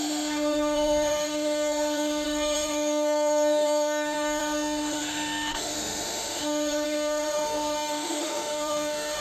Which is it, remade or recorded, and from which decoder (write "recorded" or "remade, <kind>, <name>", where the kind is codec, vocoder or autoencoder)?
remade, autoencoder, DAC-VAE